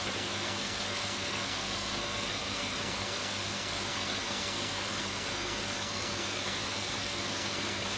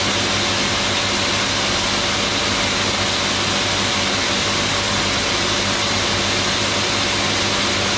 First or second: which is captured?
second